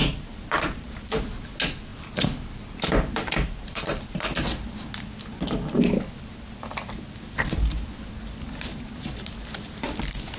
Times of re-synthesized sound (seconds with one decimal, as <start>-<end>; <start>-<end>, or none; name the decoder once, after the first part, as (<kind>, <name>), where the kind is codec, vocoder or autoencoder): 0.0-1.4 (vocoder, BigVGAN v2); 1.9-4.1